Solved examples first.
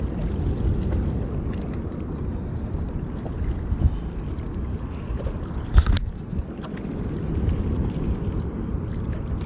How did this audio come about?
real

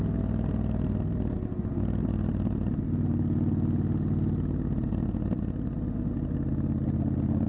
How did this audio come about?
real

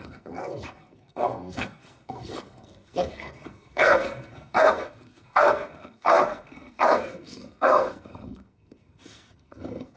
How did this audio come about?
fake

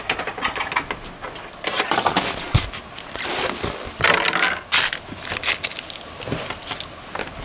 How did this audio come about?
real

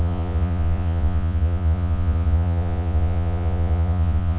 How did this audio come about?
fake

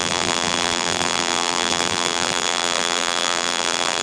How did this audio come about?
fake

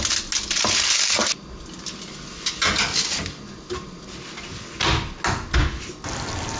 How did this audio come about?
real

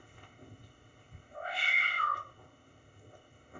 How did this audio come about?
fake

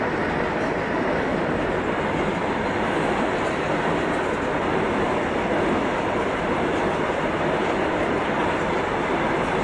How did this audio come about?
real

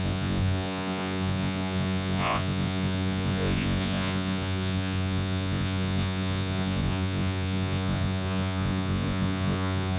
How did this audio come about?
fake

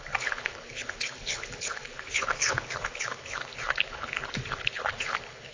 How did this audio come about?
fake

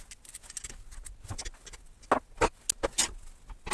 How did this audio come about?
real